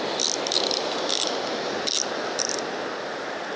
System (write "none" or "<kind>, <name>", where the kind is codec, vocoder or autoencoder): none